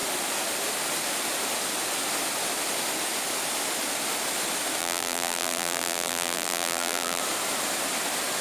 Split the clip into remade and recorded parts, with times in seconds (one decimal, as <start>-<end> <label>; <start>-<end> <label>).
0.0-4.8 recorded; 4.8-7.2 remade; 7.2-8.4 recorded

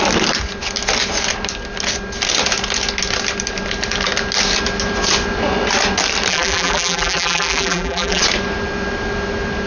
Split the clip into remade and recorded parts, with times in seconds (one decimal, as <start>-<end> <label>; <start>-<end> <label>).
0.0-6.3 recorded; 6.3-8.2 remade; 8.2-9.7 recorded

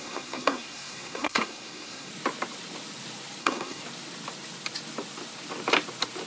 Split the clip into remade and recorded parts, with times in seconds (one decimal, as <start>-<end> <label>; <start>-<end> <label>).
0.0-2.1 remade; 2.1-3.4 recorded; 3.4-3.8 remade; 3.8-6.3 recorded

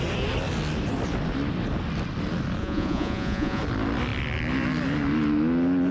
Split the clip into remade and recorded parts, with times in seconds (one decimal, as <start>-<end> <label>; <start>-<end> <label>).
0.0-2.6 recorded; 2.6-3.6 remade; 3.6-5.9 recorded

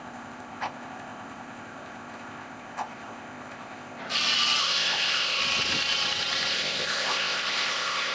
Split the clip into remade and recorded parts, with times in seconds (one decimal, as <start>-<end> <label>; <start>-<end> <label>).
0.0-4.0 remade; 4.0-4.6 recorded; 4.6-5.4 remade; 5.4-6.5 recorded; 6.5-8.1 remade